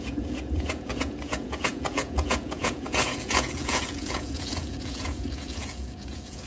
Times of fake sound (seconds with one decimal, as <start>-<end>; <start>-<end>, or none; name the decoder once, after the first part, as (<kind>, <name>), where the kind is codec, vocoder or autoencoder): 0.0-6.5 (vocoder, Vocos)